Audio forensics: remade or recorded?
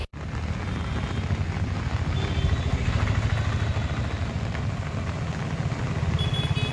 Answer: recorded